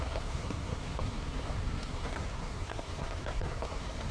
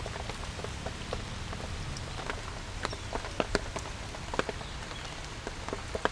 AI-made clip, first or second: first